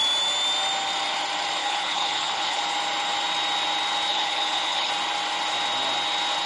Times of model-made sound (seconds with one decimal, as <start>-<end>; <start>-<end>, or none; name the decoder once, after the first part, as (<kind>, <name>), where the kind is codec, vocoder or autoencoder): 1.6-2.6 (codec, HILCodec); 4.1-4.9